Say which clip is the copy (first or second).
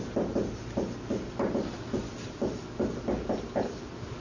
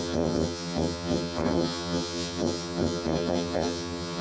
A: second